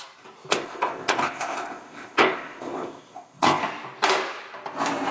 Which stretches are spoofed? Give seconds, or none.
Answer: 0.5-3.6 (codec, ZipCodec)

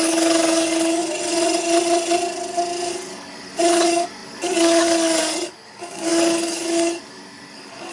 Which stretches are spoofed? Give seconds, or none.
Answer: 0.0-1.0 (codec, DAC); 2.9-7.9